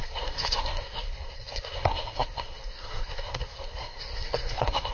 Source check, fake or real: fake